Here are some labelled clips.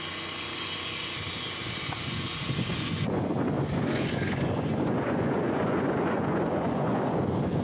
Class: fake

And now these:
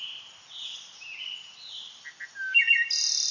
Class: real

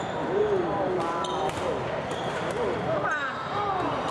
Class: fake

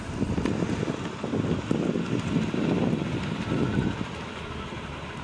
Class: real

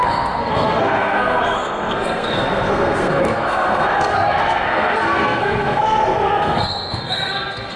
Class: fake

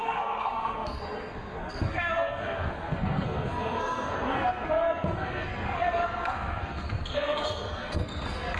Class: fake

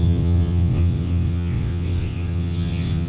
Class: fake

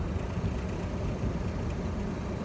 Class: fake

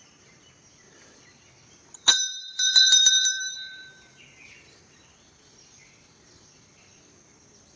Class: fake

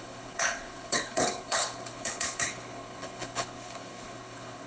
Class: fake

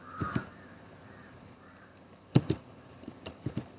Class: fake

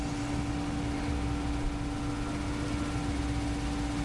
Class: real